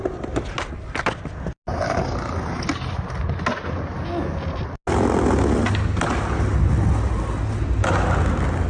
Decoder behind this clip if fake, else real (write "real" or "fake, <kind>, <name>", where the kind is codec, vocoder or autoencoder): real